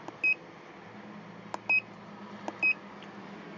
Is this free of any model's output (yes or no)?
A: yes